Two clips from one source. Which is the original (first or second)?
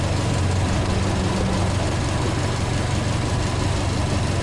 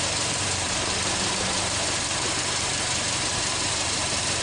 first